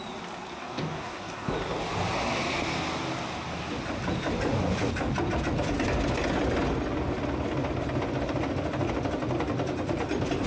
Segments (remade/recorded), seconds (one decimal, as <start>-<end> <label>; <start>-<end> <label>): 0.0-0.6 recorded; 0.6-1.5 remade; 1.5-10.5 recorded